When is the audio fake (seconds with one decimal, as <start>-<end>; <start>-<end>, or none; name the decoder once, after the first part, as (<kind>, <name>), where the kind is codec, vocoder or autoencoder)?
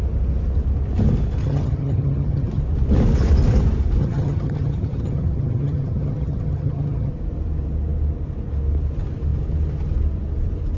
1.4-2.6 (vocoder, HiFi-GAN); 4.0-7.1